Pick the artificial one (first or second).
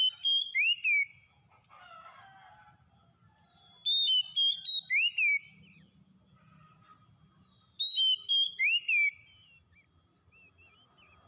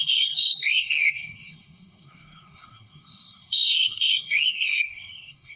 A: second